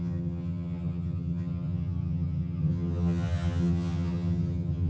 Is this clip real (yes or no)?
no